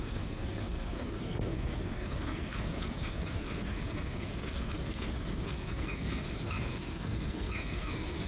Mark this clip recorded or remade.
remade